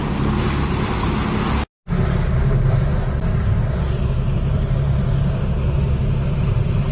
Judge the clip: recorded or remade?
recorded